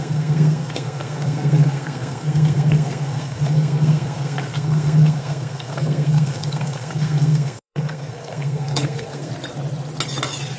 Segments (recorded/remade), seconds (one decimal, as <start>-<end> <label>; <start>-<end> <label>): 0.0-9.3 remade; 9.3-10.6 recorded